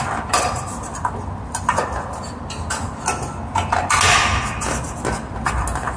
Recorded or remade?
recorded